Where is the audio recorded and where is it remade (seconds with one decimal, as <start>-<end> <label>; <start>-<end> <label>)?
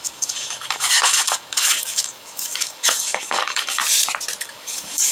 0.0-3.8 remade; 3.8-4.4 recorded; 4.4-5.1 remade